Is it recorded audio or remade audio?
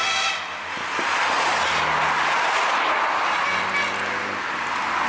recorded